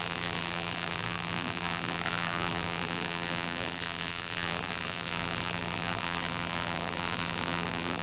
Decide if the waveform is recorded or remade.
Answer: remade